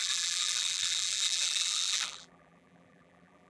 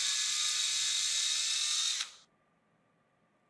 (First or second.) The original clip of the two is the second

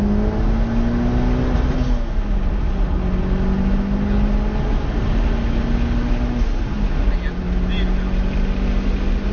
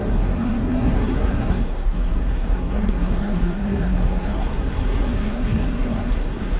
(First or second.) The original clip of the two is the first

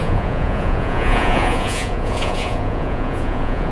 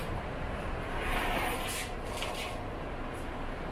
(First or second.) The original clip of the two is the second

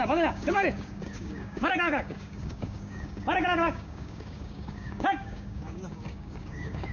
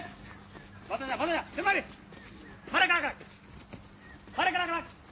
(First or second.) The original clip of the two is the second